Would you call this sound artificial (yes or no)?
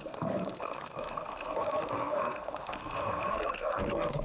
yes